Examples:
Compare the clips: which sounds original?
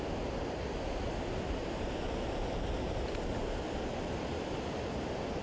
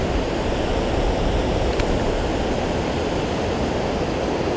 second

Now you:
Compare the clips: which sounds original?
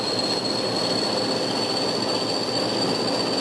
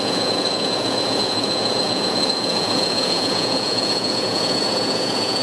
first